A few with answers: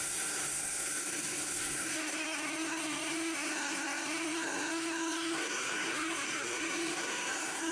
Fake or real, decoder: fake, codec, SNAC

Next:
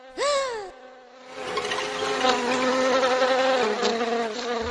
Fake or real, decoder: real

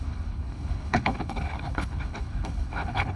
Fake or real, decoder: fake, codec, HILCodec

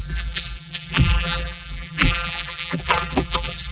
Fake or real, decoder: fake, vocoder, BigVGAN v2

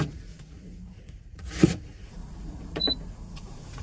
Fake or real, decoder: fake, vocoder, Vocos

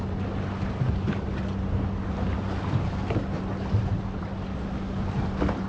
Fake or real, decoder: real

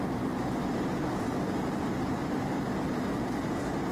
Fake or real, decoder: real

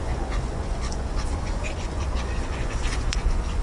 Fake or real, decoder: fake, vocoder, Vocos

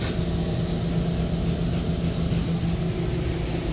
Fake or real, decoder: real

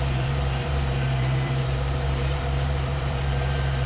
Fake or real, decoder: fake, vocoder, BigVGAN v2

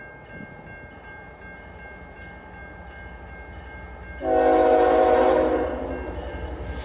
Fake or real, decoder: real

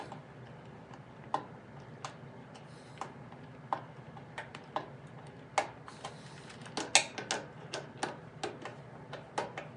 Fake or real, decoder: real